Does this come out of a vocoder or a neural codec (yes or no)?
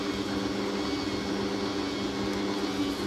no